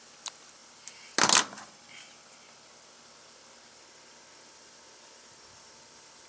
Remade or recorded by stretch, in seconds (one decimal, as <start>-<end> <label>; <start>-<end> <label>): 0.0-6.3 recorded